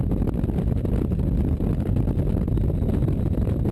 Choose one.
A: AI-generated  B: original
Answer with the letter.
A